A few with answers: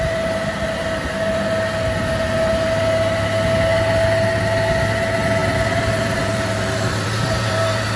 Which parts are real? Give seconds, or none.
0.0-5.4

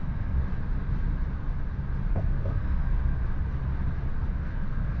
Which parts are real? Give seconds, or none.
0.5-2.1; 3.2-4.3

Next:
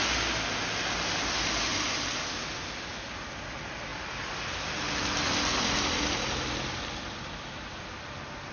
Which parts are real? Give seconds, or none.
0.0-8.5